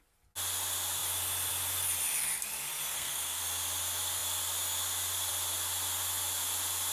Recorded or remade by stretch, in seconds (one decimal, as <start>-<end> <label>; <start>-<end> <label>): 0.0-2.9 recorded; 2.9-3.4 remade; 3.4-6.9 recorded